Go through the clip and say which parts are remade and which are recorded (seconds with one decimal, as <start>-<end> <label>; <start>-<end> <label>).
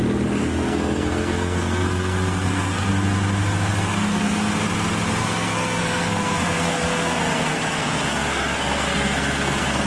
0.0-0.4 recorded; 0.4-2.9 remade; 2.9-3.7 recorded; 3.7-4.5 remade; 4.5-5.2 recorded; 5.2-9.9 remade